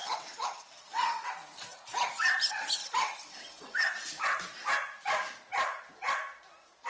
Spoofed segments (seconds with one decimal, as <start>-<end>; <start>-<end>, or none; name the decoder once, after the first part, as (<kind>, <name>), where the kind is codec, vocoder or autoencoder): 0.0-1.3 (vocoder, WaveNeXt); 2.8-3.9